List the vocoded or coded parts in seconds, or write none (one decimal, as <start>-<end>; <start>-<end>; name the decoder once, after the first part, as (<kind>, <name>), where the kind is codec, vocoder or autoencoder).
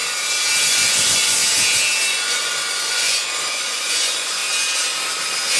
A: 0.7-1.4 (vocoder, Vocos); 2.1-4.4